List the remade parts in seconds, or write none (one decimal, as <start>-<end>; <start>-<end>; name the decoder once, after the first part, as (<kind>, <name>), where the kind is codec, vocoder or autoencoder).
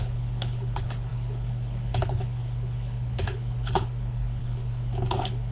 0.0-5.5 (codec, HILCodec)